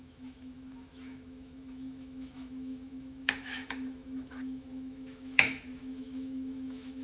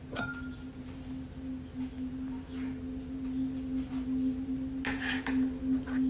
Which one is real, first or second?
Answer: second